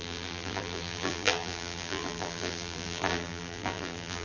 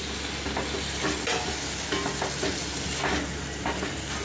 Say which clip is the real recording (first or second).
second